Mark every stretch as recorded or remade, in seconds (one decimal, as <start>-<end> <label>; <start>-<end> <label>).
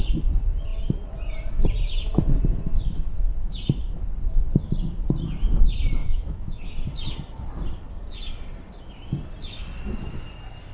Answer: 0.0-6.0 recorded; 6.0-6.7 remade; 6.7-10.7 recorded